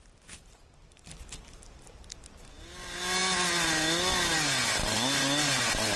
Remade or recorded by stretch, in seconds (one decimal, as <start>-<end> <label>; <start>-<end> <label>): 0.0-6.0 recorded